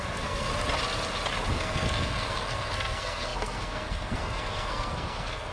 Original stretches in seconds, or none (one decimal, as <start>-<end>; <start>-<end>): 0.5-1.5